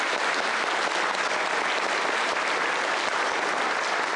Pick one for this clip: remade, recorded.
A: recorded